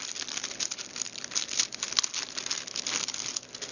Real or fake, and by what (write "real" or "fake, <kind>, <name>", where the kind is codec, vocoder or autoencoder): real